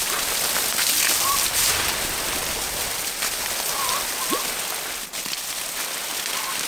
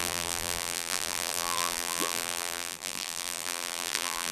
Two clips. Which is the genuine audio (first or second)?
first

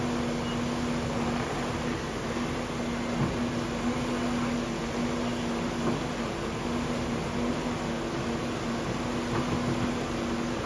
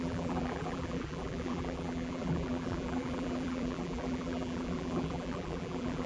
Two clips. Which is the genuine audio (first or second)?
first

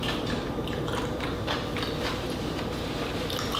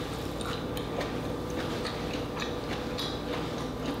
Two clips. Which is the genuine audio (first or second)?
second